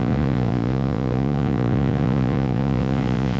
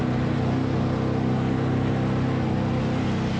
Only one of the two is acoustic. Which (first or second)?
second